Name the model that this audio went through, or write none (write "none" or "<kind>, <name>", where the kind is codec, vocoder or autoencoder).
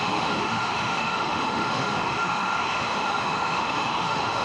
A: autoencoder, DAC-VAE